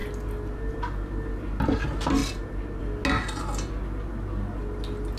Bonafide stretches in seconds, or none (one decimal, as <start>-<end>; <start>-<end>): 0.0-5.2